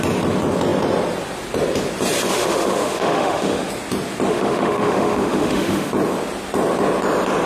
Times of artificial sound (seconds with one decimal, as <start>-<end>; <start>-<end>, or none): 2.3-3.7; 4.3-5.9